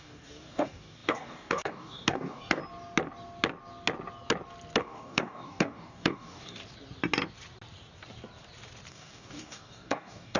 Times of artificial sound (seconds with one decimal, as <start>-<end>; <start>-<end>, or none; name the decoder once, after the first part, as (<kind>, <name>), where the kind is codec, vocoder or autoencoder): 0.0-2.6 (codec, DAC); 4.8-6.6; 8.9-10.4